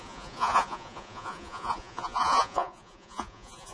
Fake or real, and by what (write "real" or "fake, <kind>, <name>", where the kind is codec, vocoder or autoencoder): fake, vocoder, Vocos